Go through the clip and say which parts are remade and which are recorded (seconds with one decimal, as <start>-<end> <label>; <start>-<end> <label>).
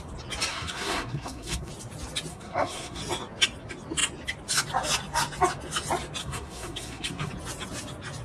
0.0-0.5 recorded; 0.5-1.7 remade; 1.7-2.3 recorded; 2.3-3.0 remade; 3.0-6.2 recorded; 6.2-7.3 remade; 7.3-8.2 recorded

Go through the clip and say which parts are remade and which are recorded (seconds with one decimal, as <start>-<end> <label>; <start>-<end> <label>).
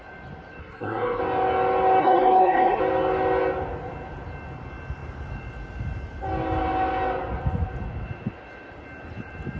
0.0-0.6 recorded; 0.6-1.2 remade; 1.2-2.0 recorded; 2.0-2.8 remade; 2.8-9.6 recorded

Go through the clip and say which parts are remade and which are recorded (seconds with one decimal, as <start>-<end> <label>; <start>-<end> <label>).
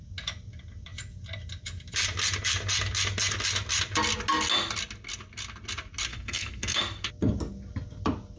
0.0-6.1 recorded; 6.1-6.8 remade; 6.8-8.4 recorded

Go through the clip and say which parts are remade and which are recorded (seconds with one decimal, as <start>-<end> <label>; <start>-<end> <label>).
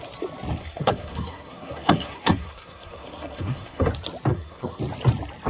0.0-0.6 recorded; 0.6-3.9 remade; 3.9-4.3 recorded; 4.3-4.8 remade; 4.8-5.5 recorded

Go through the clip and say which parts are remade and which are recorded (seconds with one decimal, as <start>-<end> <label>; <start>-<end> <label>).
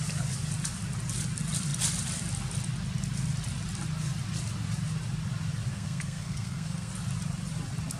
0.0-5.7 recorded; 5.7-6.9 remade; 6.9-8.0 recorded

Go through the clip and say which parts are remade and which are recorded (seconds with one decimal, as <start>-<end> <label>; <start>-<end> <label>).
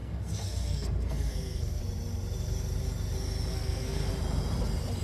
0.0-1.8 remade; 1.8-3.5 recorded; 3.5-4.1 remade; 4.1-5.0 recorded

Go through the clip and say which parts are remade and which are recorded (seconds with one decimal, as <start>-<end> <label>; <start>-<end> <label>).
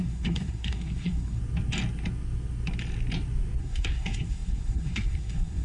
0.0-1.4 remade; 1.4-3.6 recorded; 3.6-5.6 remade